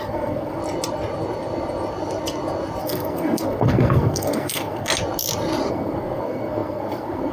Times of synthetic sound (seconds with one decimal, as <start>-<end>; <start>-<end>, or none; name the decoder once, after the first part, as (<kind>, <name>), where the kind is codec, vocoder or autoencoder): 0.0-0.6 (codec, SNAC); 2.8-4.9; 5.7-7.3